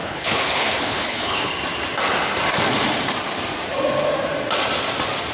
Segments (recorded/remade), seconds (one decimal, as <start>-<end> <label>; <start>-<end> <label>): 0.0-1.5 remade; 1.5-5.3 recorded